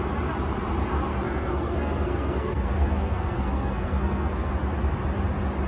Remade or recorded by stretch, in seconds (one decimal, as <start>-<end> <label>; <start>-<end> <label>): 0.0-1.1 recorded; 1.1-4.5 remade; 4.5-5.7 recorded